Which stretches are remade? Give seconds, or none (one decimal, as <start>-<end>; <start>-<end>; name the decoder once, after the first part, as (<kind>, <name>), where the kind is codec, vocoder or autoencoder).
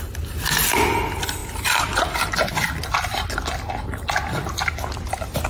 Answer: none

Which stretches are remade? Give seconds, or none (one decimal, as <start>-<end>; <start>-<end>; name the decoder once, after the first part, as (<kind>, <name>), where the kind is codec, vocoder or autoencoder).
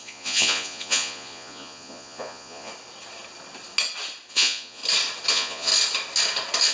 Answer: 0.0-2.7 (vocoder, Vocos); 4.3-4.8; 5.3-5.7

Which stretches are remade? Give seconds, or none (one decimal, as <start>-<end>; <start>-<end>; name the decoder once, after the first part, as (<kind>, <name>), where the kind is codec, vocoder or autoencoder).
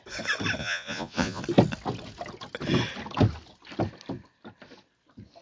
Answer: 0.6-1.4 (vocoder, Vocos)